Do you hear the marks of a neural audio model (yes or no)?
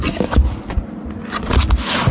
no